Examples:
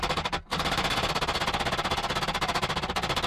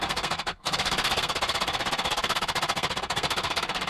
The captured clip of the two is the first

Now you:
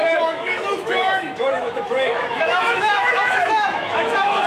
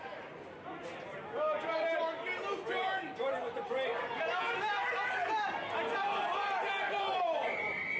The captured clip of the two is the second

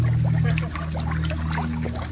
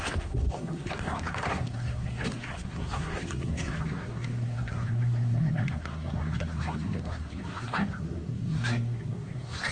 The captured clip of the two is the first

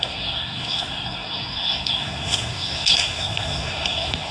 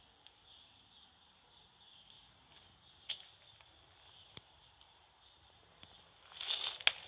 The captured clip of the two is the second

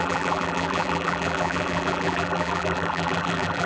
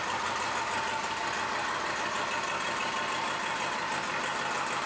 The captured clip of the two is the second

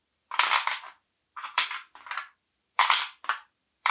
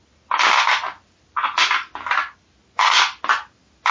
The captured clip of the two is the second